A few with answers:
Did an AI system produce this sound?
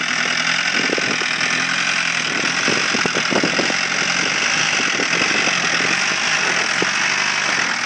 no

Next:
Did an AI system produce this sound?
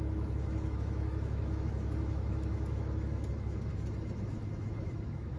yes